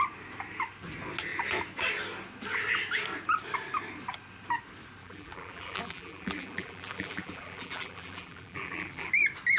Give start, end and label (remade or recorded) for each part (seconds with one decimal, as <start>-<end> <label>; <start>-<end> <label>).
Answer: 0.0-5.0 recorded; 5.0-9.1 remade; 9.1-9.6 recorded